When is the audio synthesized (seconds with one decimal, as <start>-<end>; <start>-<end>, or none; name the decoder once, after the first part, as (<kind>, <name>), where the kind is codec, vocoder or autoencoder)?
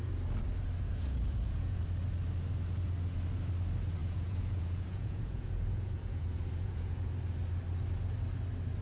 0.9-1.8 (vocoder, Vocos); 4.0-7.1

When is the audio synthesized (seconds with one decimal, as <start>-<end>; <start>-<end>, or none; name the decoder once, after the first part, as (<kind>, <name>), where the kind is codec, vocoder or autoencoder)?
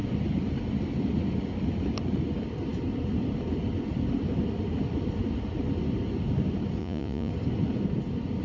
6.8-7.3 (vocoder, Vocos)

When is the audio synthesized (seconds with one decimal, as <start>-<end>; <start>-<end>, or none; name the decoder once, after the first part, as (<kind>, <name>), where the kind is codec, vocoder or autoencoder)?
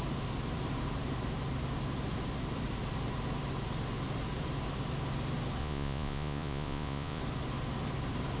5.6-7.2 (vocoder, Vocos)